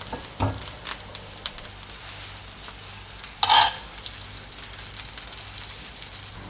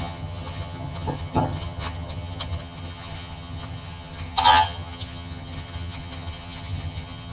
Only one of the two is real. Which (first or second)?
first